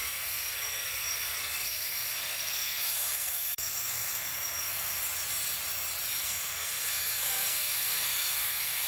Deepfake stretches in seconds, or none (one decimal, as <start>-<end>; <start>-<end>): 0.0-5.0; 6.2-8.9